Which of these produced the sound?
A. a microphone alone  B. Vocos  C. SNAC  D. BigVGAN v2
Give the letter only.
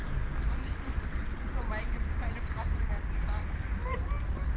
A